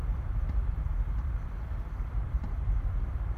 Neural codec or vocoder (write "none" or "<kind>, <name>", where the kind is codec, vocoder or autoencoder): vocoder, BigVGAN v2